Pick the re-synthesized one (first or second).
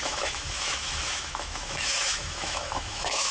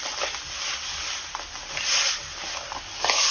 first